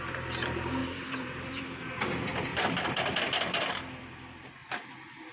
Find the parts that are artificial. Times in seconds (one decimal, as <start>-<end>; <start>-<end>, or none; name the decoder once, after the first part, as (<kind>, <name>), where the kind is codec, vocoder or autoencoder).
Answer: 0.8-1.8 (vocoder, BigVGAN v2); 2.5-3.2; 4.6-5.3